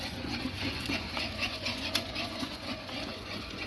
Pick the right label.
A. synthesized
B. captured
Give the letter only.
A